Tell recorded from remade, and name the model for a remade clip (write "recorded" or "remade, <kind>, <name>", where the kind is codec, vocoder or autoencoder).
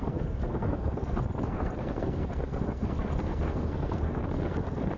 remade, codec, SNAC